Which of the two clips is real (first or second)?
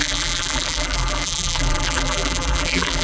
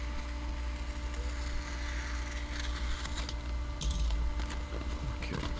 second